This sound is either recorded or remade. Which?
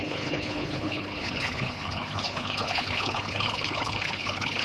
remade